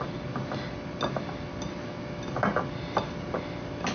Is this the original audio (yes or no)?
yes